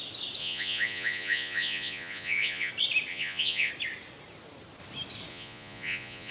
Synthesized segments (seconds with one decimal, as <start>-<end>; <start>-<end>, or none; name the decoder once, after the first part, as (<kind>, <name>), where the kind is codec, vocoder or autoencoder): 0.4-2.7 (vocoder, Vocos); 3.1-3.7; 5.3-6.3